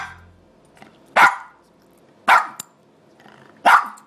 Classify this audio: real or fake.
real